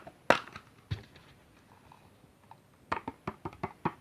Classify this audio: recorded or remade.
recorded